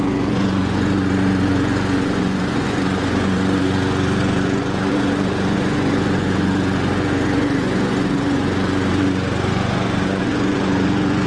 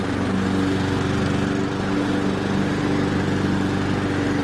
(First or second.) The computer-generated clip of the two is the first